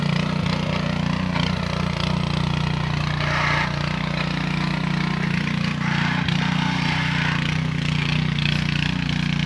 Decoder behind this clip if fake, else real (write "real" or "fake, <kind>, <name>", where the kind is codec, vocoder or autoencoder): real